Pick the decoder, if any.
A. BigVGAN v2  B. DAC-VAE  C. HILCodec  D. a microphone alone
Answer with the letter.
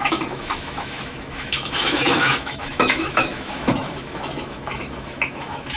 B